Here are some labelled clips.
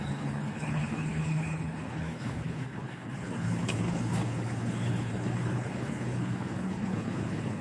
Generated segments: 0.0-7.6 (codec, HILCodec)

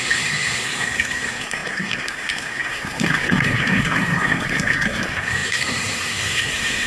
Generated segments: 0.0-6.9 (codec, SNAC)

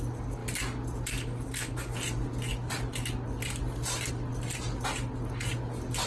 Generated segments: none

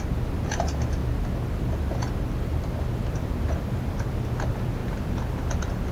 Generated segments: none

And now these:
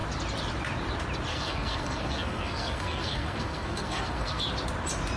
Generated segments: 1.3-4.4 (codec, SNAC)